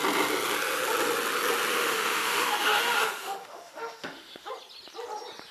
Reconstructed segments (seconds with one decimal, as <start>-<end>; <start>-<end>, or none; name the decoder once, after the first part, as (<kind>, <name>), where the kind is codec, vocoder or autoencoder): 1.7-4.5 (autoencoder, DAC-VAE)